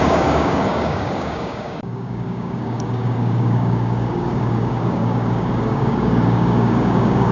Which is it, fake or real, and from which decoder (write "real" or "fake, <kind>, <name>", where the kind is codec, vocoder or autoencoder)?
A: fake, codec, DAC